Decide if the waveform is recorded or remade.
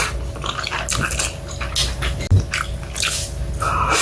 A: recorded